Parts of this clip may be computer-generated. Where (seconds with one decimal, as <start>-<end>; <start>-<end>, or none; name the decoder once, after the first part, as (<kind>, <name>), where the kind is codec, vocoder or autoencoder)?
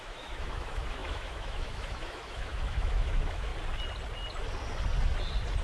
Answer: 0.0-3.5 (autoencoder, DAC-VAE)